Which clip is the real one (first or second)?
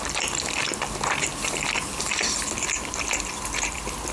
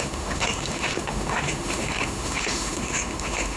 first